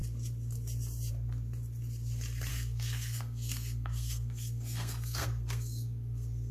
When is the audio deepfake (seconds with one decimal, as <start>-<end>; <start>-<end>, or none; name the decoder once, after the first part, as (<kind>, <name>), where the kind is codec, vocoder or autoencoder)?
2.5-6.5 (codec, SNAC)